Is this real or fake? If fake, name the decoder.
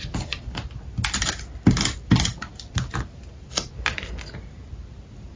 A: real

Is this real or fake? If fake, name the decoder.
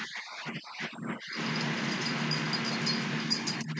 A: real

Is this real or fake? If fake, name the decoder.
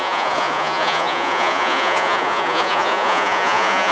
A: fake, vocoder, Vocos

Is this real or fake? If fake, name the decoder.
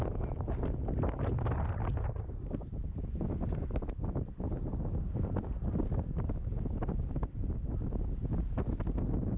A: real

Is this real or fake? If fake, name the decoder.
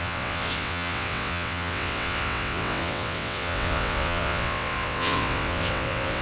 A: fake, vocoder, WaveNeXt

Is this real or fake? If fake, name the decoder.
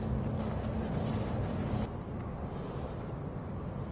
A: real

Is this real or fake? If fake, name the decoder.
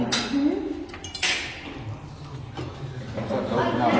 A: real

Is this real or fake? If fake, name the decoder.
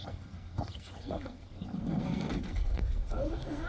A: fake, codec, SNAC